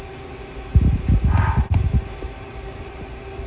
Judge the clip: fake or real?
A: real